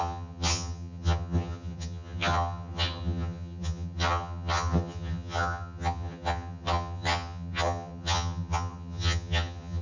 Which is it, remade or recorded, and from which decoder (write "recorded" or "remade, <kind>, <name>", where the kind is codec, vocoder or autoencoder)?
remade, vocoder, HiFi-GAN